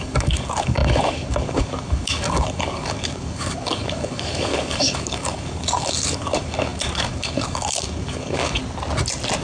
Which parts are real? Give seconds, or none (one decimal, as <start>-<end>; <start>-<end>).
8.6-9.4